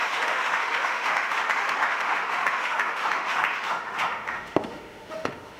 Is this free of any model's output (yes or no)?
no